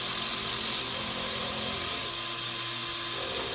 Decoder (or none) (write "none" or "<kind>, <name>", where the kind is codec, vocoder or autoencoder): none